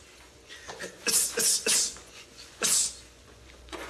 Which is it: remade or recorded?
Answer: remade